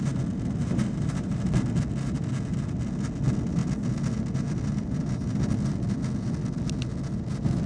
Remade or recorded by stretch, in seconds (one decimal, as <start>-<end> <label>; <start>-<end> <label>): 0.0-0.6 recorded; 0.6-1.5 remade; 1.5-7.7 recorded